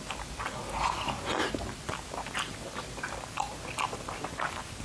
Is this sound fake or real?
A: real